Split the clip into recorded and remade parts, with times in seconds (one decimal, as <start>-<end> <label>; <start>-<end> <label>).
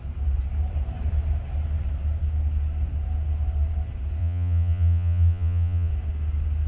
0.0-4.2 recorded; 4.2-5.9 remade; 5.9-6.7 recorded